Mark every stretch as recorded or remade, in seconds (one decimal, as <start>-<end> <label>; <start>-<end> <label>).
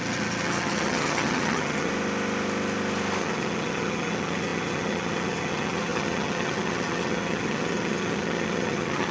0.0-1.9 remade; 1.9-3.2 recorded; 3.2-9.1 remade